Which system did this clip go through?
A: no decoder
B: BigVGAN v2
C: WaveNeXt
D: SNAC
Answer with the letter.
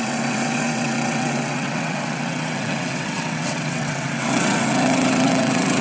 C